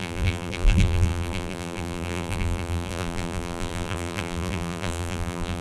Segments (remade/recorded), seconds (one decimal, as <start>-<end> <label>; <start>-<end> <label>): 0.0-5.6 remade